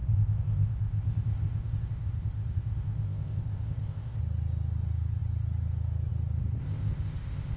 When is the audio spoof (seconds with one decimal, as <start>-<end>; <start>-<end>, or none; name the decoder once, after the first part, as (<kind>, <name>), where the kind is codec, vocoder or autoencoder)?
0.0-4.2 (codec, ZipCodec); 6.6-7.6